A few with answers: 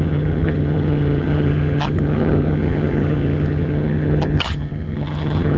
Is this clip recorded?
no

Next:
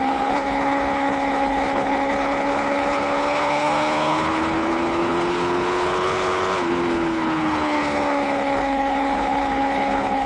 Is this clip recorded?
no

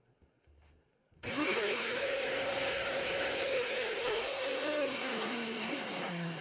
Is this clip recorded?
no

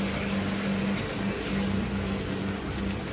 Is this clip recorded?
yes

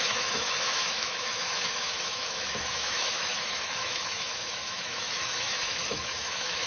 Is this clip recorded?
no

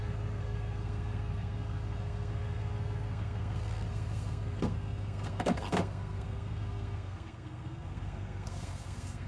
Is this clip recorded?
no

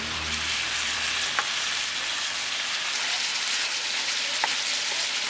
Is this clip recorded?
no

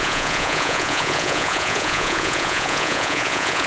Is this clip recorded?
no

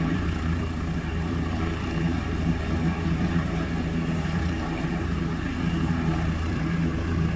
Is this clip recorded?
no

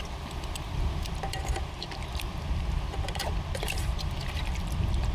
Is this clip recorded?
no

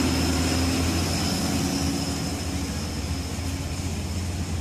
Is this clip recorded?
yes